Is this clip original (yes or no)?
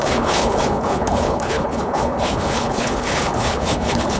no